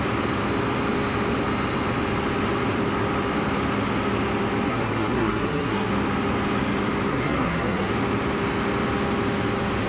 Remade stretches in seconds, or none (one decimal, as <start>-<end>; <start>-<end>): 4.7-5.9; 7.1-7.9